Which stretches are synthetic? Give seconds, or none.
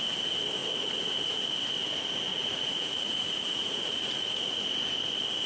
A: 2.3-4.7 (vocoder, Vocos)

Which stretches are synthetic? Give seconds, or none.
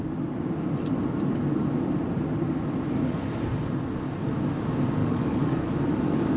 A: 5.0-5.8 (codec, DAC)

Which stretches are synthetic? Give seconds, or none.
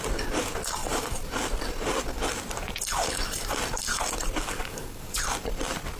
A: 4.4-5.2 (codec, DAC)